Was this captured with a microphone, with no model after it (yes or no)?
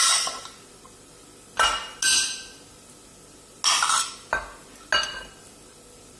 yes